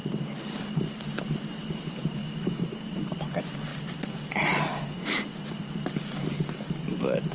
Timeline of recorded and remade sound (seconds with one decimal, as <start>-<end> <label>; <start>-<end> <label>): 0.0-2.2 recorded; 2.2-2.7 remade; 2.7-7.3 recorded